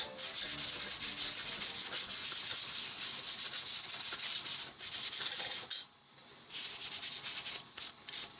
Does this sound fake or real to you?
real